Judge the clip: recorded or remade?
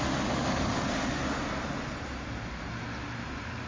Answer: recorded